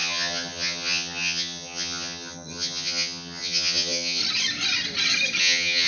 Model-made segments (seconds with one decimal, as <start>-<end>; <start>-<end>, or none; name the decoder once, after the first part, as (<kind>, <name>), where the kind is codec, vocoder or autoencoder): 0.0-4.2 (vocoder, HiFi-GAN); 5.4-5.9

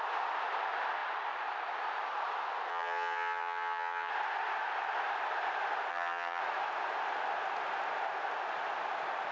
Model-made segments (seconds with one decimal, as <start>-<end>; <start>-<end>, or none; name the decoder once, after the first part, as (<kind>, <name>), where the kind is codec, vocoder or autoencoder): 2.7-4.1 (vocoder, HiFi-GAN); 5.9-6.4

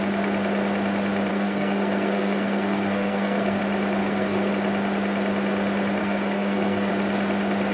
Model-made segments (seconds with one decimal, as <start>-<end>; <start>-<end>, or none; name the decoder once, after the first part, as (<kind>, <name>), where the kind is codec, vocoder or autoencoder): 1.3-3.6 (codec, SNAC); 4.0-4.5; 6.0-6.9